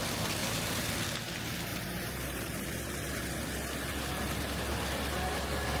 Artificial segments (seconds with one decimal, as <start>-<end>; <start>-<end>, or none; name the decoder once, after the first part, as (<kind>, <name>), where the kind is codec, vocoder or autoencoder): 0.4-0.9 (vocoder, BigVGAN v2); 1.7-3.2